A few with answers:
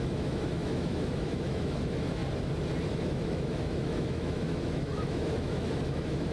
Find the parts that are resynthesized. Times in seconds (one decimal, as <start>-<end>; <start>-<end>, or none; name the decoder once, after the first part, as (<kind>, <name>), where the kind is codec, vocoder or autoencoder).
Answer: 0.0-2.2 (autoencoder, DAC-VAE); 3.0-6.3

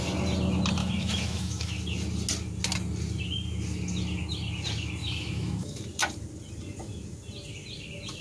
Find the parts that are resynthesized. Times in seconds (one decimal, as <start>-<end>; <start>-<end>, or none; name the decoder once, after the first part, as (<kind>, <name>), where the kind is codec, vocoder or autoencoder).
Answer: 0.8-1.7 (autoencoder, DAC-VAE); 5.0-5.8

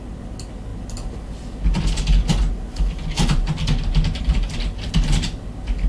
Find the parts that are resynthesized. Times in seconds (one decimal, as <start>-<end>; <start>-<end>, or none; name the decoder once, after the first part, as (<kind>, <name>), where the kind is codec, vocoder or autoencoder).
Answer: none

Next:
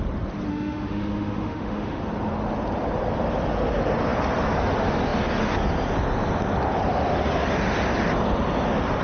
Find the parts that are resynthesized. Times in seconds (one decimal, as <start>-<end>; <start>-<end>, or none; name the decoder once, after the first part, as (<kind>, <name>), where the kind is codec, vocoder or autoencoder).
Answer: 0.5-2.0 (autoencoder, DAC-VAE)

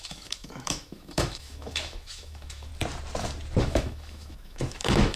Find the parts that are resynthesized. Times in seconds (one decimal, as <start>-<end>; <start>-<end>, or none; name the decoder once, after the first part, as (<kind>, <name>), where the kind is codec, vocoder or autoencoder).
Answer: 0.0-2.7 (autoencoder, DAC-VAE); 3.6-5.2

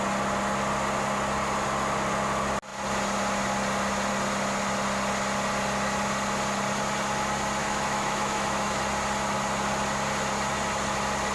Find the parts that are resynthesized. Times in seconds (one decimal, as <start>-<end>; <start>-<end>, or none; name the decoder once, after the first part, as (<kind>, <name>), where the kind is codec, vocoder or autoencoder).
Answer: 7.6-8.8 (autoencoder, DAC-VAE)

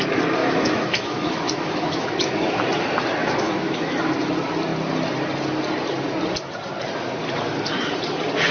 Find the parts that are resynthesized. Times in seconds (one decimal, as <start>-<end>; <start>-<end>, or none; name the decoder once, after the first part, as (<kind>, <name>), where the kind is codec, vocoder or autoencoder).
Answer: 0.4-2.6 (autoencoder, DAC-VAE); 3.2-4.0

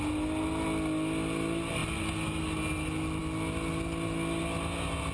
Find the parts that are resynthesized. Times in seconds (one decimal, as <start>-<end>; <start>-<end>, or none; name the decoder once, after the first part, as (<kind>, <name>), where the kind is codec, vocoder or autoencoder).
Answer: none